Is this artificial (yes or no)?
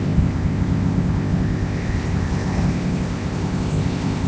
yes